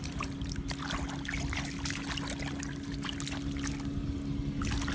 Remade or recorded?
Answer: recorded